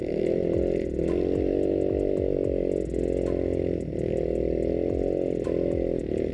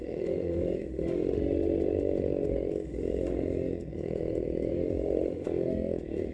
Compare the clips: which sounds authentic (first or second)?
first